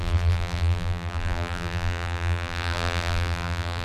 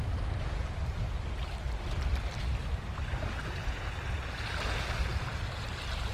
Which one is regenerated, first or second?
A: first